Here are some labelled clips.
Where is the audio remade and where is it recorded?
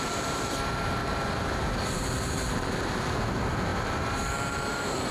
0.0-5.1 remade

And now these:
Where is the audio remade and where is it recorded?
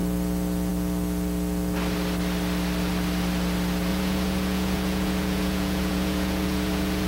0.0-3.9 recorded; 3.9-7.1 remade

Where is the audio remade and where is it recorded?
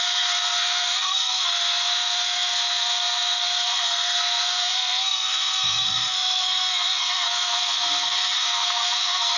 0.0-9.4 remade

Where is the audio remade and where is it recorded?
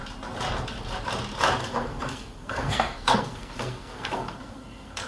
0.0-1.6 recorded; 1.6-5.1 remade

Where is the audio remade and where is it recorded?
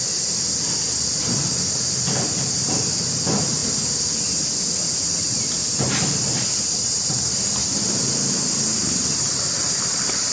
0.0-10.3 recorded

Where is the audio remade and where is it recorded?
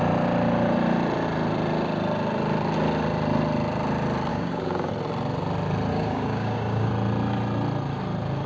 0.0-4.3 recorded; 4.3-4.9 remade; 4.9-5.9 recorded; 5.9-6.9 remade; 6.9-8.5 recorded